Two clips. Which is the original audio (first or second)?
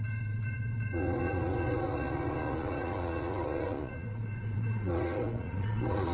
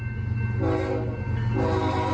second